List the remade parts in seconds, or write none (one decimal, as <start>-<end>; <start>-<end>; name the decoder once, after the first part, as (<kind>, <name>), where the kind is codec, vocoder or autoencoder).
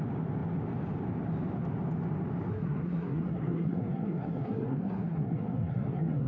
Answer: 2.5-6.3 (codec, SNAC)